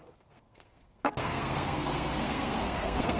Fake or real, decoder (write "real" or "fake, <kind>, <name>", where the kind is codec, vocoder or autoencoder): fake, codec, SNAC